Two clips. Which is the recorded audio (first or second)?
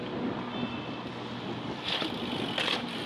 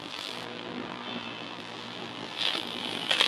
first